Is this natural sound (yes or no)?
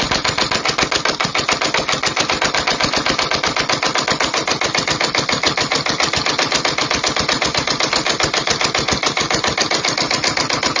yes